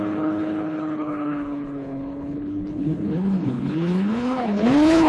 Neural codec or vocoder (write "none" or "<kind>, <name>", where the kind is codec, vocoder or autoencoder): codec, HILCodec